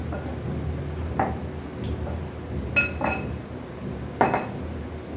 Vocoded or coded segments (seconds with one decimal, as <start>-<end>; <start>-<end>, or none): none